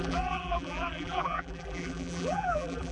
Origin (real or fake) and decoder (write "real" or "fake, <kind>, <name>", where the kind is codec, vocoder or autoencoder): fake, vocoder, BigVGAN v2